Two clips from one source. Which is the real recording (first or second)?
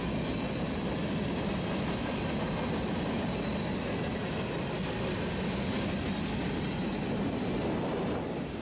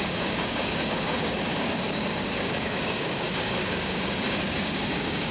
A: first